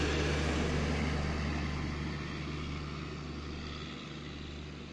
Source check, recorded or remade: recorded